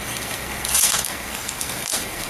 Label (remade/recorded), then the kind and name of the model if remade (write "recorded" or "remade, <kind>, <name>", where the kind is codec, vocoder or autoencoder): remade, codec, SNAC